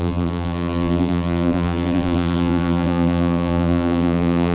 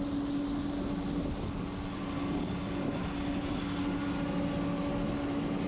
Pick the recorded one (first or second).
second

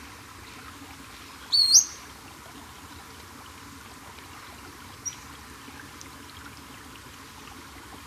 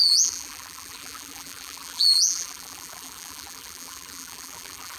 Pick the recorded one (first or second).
first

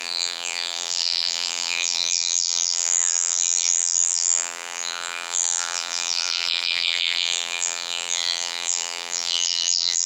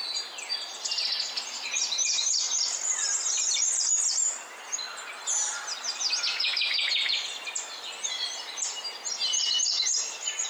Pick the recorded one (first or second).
second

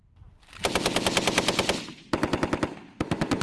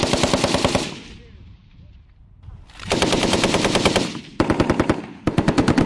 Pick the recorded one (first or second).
first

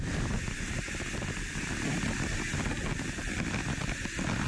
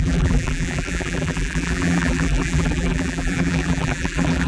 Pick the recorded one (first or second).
first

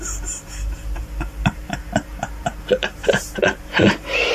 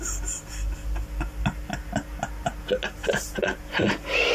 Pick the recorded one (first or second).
second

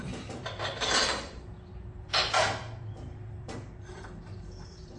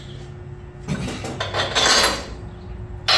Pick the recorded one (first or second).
second